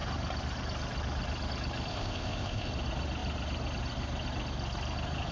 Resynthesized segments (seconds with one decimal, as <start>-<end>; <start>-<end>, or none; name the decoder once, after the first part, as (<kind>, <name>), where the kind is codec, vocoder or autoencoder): 1.9-2.7 (codec, ZipCodec)